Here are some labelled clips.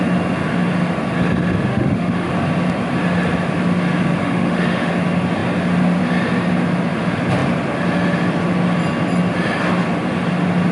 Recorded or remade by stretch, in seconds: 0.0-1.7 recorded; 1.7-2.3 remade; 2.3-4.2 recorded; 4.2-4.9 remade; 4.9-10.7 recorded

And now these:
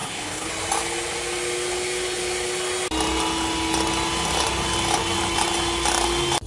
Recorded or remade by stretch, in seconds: 0.0-0.5 remade; 0.5-6.5 recorded